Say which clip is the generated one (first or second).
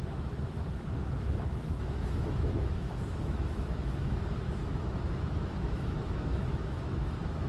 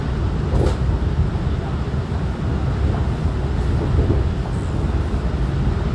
first